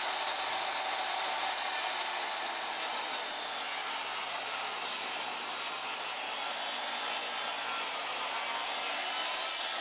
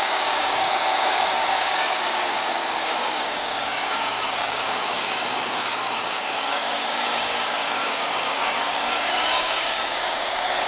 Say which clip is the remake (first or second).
second